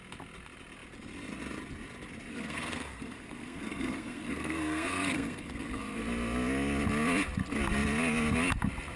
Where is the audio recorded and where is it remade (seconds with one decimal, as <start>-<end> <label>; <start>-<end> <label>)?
0.0-2.3 recorded; 2.3-6.0 remade; 6.0-9.0 recorded